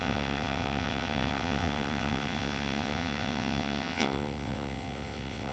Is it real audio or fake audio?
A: fake